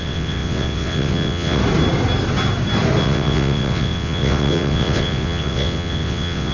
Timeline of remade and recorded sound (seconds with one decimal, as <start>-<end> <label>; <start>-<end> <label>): 0.0-1.6 remade; 1.6-3.0 recorded; 3.0-6.5 remade